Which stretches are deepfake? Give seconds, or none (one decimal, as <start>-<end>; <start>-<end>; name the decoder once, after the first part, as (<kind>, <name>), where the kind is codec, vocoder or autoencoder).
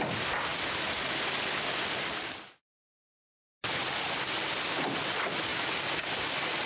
none